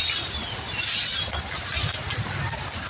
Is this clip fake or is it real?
real